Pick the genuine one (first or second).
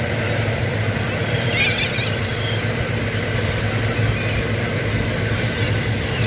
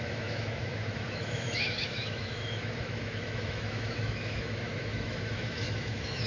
first